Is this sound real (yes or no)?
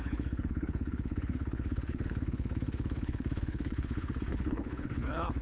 no